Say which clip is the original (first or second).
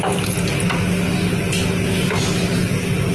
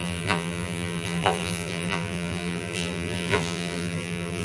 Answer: first